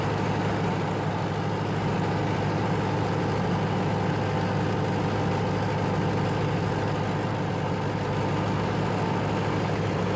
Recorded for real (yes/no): yes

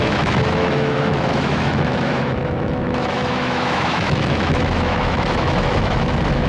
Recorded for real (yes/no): no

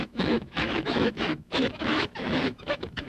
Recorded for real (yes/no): no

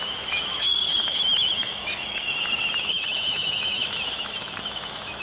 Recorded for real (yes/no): no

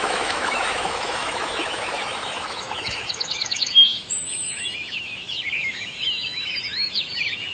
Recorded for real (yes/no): no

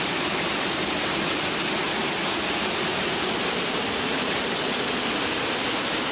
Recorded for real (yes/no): yes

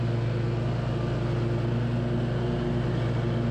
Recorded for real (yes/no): yes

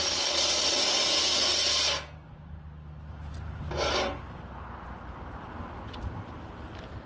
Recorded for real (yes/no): yes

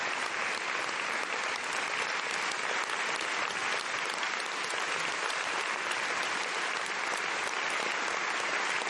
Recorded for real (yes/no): yes